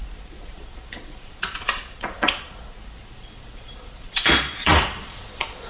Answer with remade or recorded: remade